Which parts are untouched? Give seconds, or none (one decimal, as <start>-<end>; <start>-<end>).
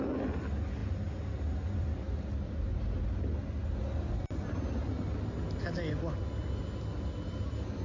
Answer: 0.0-7.8